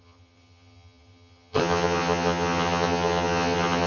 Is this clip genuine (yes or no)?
no